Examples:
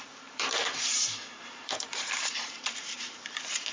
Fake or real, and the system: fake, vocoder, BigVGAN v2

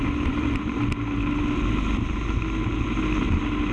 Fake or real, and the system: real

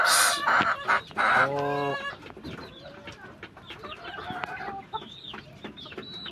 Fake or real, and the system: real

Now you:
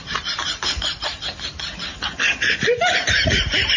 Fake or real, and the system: real